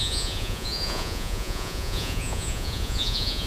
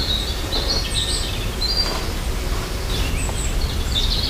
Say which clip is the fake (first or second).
first